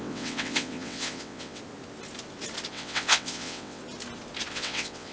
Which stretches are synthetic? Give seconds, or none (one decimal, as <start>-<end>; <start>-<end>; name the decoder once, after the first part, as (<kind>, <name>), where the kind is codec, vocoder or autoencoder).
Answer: 0.0-1.6 (vocoder, WaveNeXt); 2.7-3.8; 4.5-5.1